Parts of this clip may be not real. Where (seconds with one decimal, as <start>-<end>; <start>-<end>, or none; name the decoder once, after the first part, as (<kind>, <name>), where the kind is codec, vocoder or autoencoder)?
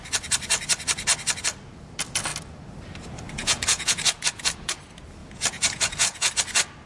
3.4-4.8 (vocoder, Vocos); 5.2-6.3